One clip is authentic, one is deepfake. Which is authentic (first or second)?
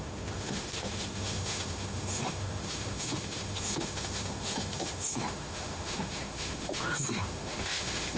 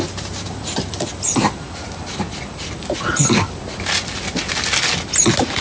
second